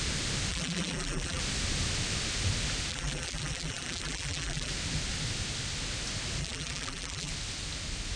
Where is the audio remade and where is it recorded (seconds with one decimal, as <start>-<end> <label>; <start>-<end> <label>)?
0.0-0.5 recorded; 0.5-1.4 remade; 1.4-2.9 recorded; 2.9-4.7 remade; 4.7-6.4 recorded; 6.4-7.3 remade; 7.3-8.2 recorded